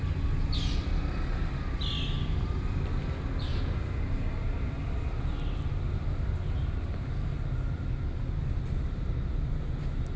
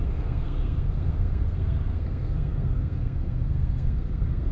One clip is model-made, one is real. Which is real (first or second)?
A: first